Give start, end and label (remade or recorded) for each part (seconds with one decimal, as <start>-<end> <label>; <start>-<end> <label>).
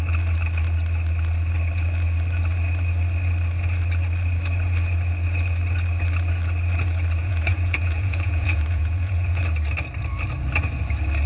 0.0-7.2 recorded; 7.2-9.4 remade; 9.4-11.3 recorded